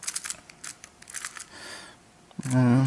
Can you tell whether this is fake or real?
real